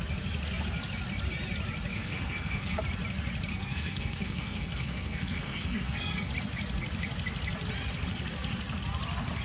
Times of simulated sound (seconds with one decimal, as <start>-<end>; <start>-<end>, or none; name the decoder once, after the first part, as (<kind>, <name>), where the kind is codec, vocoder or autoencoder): 1.9-2.8 (codec, SNAC); 3.5-6.3